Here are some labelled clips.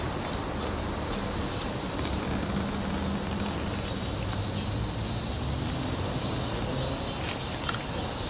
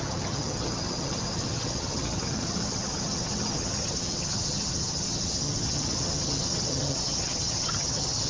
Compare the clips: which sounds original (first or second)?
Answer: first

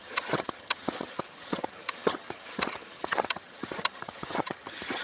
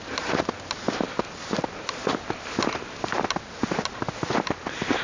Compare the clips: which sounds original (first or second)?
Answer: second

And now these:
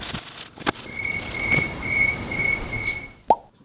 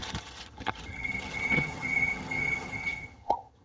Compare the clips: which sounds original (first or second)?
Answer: first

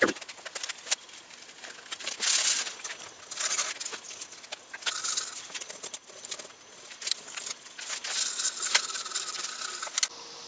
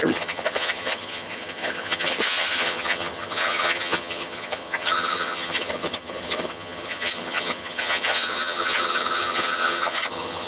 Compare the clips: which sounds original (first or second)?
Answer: first